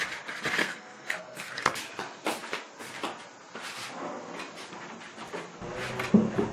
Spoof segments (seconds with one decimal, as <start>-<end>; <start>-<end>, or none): 0.6-1.8